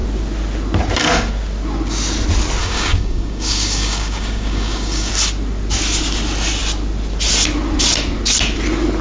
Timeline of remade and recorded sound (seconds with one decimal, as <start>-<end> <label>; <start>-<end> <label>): 0.0-2.6 recorded; 2.6-5.1 remade; 5.1-9.0 recorded